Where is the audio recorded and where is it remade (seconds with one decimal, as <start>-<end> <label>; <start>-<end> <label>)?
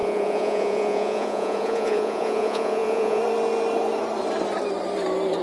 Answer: 0.0-3.2 remade; 3.2-5.4 recorded